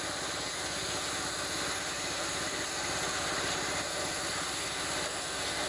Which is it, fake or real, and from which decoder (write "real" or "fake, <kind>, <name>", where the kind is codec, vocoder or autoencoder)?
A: real